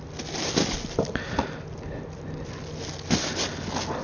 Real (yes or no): yes